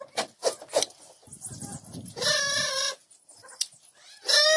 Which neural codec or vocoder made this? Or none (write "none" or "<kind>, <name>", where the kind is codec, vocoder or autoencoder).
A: none